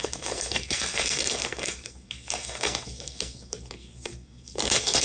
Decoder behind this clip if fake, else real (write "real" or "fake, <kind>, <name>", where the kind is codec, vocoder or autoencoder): fake, codec, SNAC